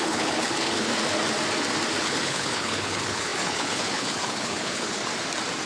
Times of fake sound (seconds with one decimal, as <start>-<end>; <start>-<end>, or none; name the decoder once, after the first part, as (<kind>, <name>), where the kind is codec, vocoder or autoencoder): 0.0-0.9 (codec, HILCodec); 2.0-5.0